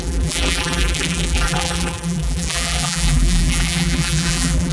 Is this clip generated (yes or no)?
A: yes